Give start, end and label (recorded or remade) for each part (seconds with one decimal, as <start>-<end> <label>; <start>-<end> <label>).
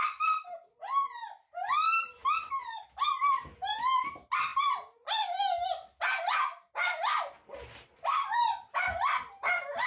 0.0-9.9 recorded